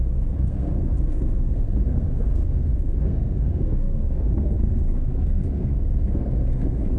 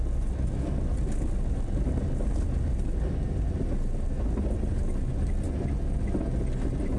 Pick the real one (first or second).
second